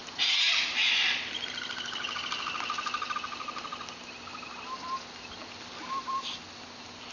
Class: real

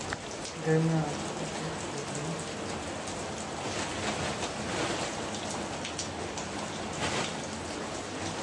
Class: real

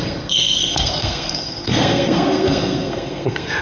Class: fake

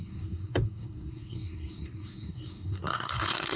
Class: fake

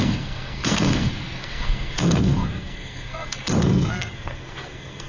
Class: fake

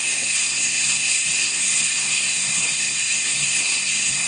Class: fake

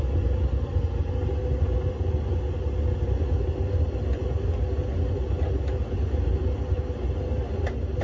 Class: real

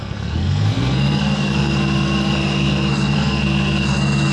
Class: fake